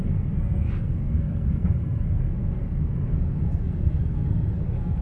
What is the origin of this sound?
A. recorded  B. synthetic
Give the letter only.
B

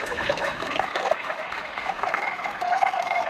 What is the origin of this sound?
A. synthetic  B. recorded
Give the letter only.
A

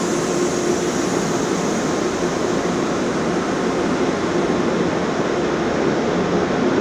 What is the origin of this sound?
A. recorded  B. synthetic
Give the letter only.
A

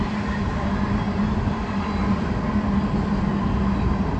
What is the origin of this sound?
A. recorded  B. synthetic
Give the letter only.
A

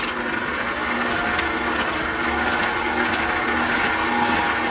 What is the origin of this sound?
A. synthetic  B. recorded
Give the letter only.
B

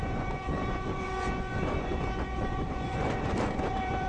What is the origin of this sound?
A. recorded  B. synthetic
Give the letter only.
B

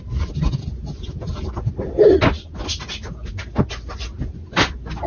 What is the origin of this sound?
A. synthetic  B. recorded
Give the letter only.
B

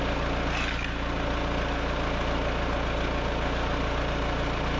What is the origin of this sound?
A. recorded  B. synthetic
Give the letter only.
A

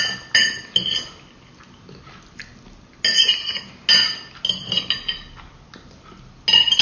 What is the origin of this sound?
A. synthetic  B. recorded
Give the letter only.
B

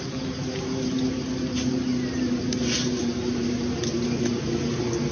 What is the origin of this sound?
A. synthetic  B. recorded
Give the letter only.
B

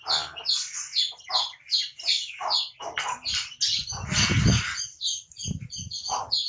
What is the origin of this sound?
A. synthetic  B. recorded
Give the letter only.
B